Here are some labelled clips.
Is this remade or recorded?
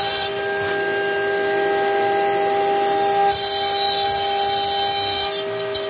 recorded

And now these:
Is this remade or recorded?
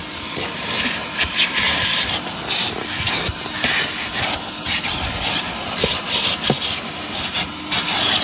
recorded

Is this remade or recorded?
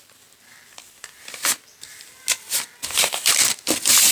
recorded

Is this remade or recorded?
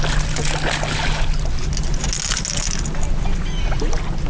recorded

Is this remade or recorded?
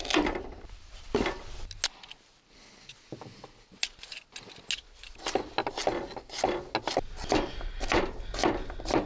recorded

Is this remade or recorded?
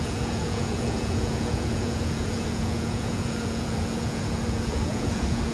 remade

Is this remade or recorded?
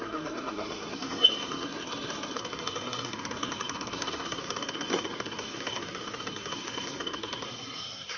remade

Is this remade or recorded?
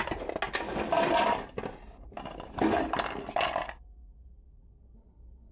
recorded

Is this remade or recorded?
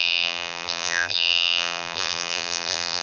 remade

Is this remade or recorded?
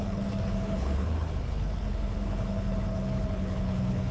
remade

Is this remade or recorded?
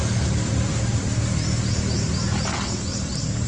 recorded